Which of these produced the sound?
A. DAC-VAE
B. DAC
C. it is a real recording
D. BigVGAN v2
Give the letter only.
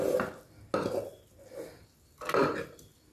C